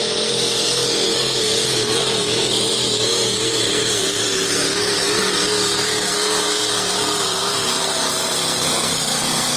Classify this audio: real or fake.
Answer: fake